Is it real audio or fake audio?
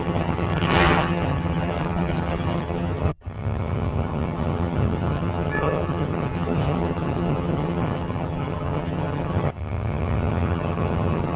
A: fake